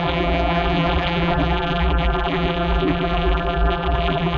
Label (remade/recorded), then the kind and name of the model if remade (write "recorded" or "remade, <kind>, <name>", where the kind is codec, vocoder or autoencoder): remade, vocoder, BigVGAN v2